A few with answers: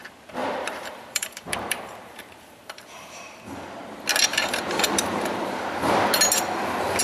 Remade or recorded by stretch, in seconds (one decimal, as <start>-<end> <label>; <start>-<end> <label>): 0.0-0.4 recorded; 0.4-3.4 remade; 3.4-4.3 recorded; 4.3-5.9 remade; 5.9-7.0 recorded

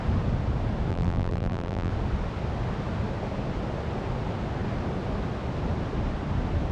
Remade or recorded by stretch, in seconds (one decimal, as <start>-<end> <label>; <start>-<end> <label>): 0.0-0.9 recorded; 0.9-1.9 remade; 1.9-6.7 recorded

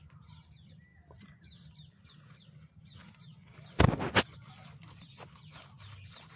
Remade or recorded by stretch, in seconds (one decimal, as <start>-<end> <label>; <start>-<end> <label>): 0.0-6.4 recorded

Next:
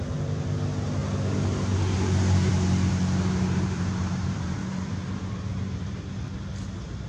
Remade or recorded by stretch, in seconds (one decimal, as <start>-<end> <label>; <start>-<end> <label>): 0.0-2.9 recorded; 2.9-6.0 remade; 6.0-7.1 recorded

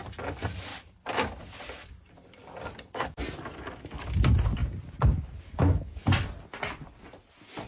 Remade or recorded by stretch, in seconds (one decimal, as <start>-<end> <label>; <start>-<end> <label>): 0.0-0.7 recorded; 0.7-2.7 remade; 2.7-7.7 recorded

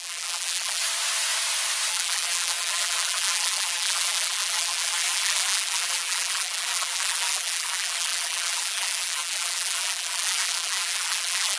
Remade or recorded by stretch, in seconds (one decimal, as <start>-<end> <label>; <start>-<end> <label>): 0.0-0.8 remade; 0.8-1.9 recorded; 1.9-11.6 remade

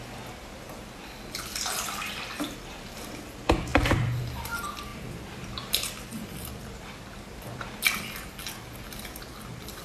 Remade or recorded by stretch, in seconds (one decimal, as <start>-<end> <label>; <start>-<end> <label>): 0.0-3.7 recorded; 3.7-4.2 remade; 4.2-4.9 recorded; 4.9-8.5 remade; 8.5-9.8 recorded

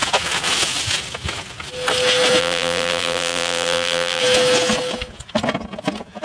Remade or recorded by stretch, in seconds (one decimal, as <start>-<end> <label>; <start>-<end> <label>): 0.0-2.4 recorded; 2.4-4.2 remade; 4.2-6.2 recorded